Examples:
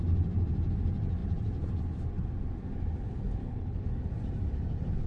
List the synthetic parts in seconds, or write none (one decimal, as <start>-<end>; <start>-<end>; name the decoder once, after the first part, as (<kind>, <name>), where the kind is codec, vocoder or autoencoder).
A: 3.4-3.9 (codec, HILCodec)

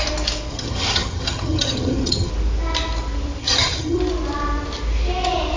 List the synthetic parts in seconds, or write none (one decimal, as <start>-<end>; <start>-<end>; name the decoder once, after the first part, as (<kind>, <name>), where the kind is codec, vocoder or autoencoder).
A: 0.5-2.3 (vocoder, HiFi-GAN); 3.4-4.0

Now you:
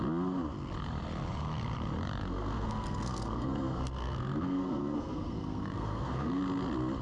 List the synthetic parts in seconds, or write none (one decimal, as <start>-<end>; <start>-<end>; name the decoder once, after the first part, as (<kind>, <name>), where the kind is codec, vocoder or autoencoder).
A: 2.2-6.4 (codec, SNAC)

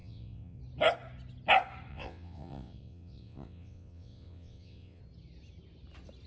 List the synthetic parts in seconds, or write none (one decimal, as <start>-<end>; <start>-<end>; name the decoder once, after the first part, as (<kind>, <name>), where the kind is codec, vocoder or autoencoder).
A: 0.0-0.6 (vocoder, WaveNeXt); 1.9-5.0